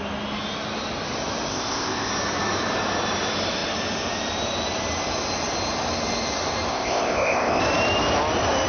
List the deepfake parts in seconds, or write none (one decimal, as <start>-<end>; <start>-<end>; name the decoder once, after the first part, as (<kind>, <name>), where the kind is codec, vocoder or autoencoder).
1.5-2.1 (codec, ZipCodec); 6.7-7.6